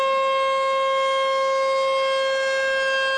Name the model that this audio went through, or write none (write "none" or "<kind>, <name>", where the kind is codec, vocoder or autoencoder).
none